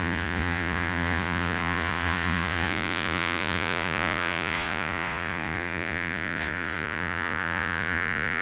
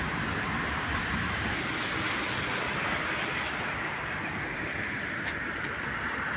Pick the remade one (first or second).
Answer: first